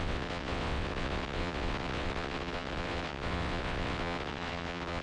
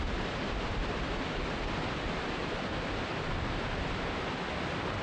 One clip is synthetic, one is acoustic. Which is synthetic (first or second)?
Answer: first